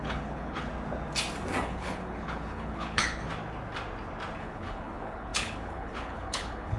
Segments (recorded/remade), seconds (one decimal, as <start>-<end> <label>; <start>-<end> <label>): 0.0-0.7 remade; 0.7-1.6 recorded; 1.6-3.2 remade; 3.2-4.4 recorded; 4.4-6.8 remade